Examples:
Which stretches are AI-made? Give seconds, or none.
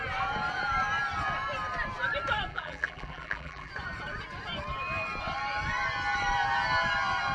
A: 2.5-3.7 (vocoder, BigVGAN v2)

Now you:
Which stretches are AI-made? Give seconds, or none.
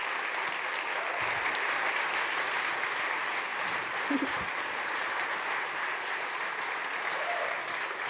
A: 3.5-6.6 (vocoder, BigVGAN v2)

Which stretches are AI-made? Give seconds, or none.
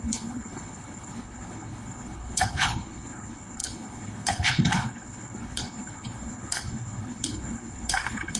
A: 0.0-8.4 (codec, HILCodec)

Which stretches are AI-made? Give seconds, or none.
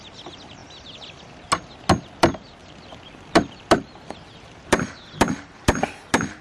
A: 2.6-5.8 (vocoder, BigVGAN v2)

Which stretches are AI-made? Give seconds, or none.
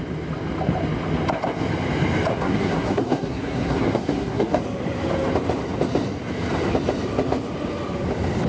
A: 2.3-4.6 (codec, SNAC)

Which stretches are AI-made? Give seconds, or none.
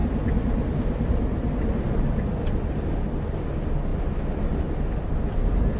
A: none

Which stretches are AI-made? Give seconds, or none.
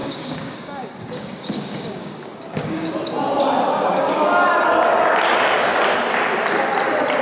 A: 0.0-2.9 (codec, DAC); 3.9-4.5; 5.3-5.8